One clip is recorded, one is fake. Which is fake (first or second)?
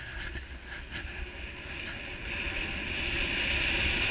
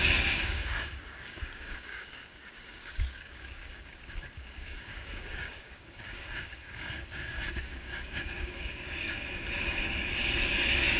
second